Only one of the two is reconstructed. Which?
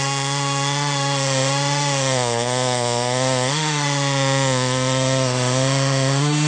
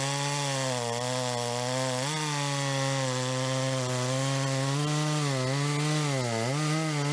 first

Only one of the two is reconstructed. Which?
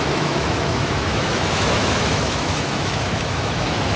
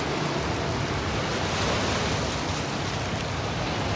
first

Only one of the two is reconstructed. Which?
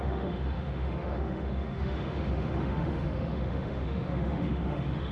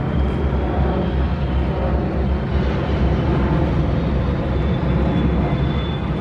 first